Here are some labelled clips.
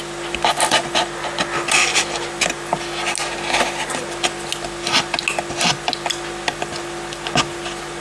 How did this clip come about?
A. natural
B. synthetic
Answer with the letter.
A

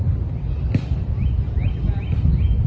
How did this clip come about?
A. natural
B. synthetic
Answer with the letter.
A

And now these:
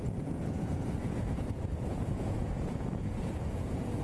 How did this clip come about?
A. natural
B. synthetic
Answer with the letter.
B